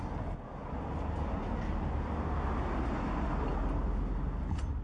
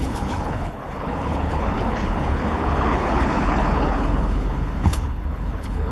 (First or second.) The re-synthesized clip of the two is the second